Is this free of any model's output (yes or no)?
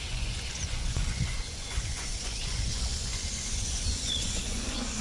no